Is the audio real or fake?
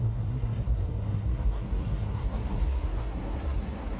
fake